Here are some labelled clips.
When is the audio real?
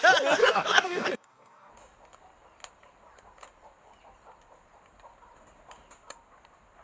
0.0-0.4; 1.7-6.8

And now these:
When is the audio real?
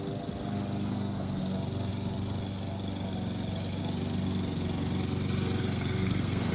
0.0-0.9; 1.4-5.6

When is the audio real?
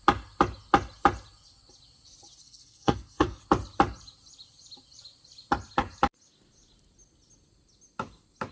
0.0-2.4; 3.4-8.5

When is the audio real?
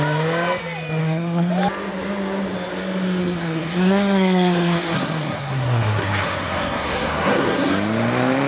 0.0-1.0; 1.5-3.2; 7.7-8.5